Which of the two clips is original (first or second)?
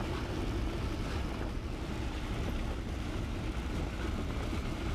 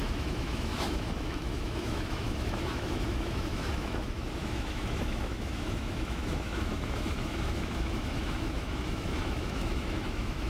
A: first